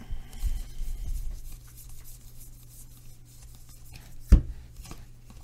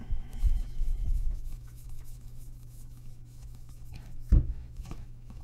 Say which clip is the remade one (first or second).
second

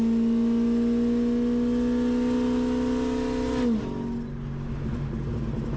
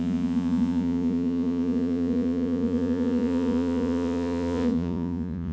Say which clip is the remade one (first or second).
second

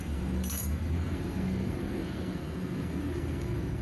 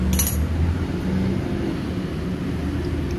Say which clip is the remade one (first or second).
first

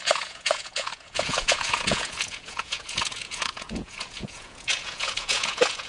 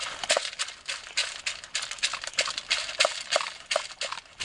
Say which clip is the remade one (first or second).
first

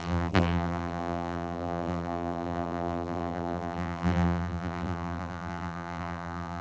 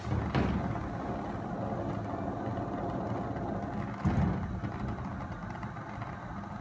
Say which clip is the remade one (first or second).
first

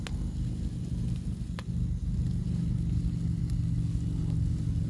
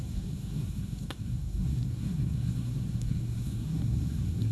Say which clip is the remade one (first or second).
second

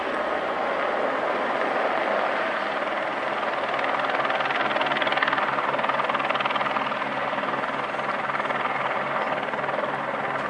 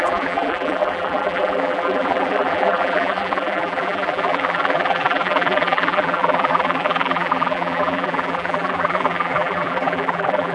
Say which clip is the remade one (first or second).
second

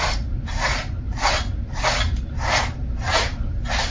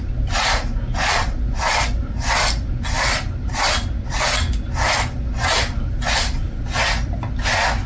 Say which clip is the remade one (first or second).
first